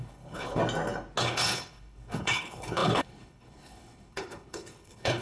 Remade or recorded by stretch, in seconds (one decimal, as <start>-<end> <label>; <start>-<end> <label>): 0.0-0.6 remade; 0.6-1.2 recorded; 1.2-5.2 remade